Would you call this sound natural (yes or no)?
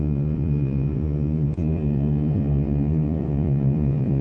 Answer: no